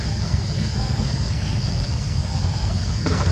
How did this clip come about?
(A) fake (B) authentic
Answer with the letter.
A